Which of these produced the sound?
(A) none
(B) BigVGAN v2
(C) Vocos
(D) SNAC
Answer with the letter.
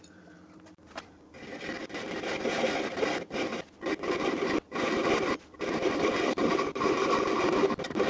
B